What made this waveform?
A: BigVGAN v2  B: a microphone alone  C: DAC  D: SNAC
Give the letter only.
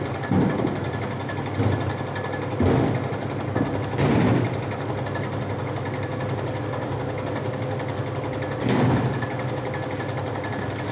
B